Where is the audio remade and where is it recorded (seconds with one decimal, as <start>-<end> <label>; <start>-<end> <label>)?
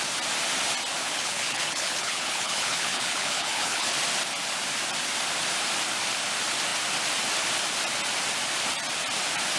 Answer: 0.0-1.0 recorded; 1.0-3.9 remade; 3.9-9.6 recorded